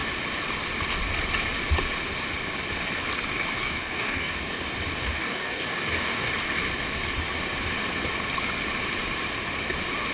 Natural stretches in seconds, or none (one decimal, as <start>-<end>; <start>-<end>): 0.0-3.6; 4.6-5.0; 6.3-10.1

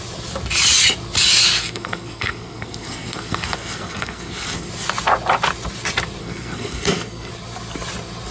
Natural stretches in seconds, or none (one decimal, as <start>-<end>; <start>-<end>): 0.0-1.6; 4.7-6.2; 7.3-8.3

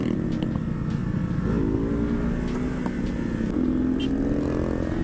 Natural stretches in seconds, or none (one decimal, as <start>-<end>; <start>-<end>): 0.0-5.0